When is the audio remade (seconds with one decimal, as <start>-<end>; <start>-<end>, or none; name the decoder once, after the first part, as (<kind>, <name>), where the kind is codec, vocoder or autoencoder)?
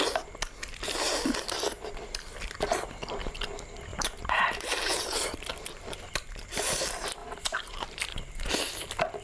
3.9-4.4 (vocoder, BigVGAN v2); 7.2-8.5